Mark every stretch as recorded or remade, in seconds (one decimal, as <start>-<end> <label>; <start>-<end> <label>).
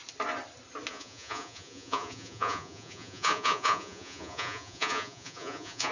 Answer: 0.0-0.9 recorded; 0.9-5.9 remade